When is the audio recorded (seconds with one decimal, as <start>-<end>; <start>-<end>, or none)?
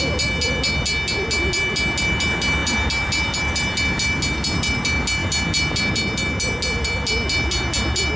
0.0-8.2